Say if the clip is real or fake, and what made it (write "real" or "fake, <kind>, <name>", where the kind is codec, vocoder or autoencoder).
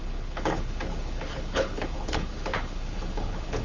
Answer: fake, codec, HILCodec